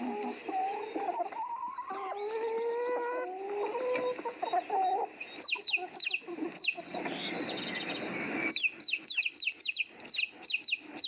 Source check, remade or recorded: recorded